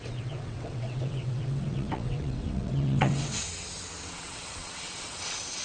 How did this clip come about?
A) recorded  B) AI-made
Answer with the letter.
B